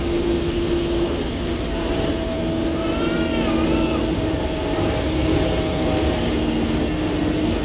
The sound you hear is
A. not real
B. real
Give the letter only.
B